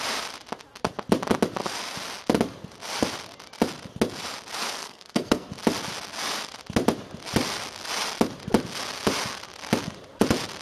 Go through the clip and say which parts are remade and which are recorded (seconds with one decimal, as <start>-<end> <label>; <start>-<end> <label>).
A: 0.0-4.8 recorded; 4.8-5.5 remade; 5.5-10.6 recorded